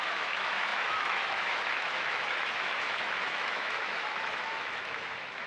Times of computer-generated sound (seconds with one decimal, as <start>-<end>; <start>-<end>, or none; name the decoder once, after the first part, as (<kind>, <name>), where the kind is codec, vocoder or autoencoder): 0.0-5.5 (autoencoder, DAC-VAE)